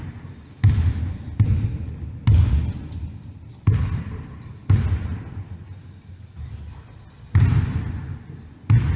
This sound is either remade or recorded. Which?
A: recorded